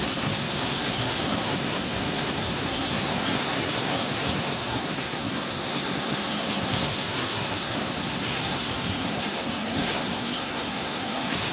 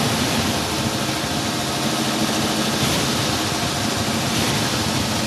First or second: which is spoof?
first